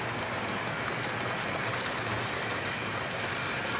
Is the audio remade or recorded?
recorded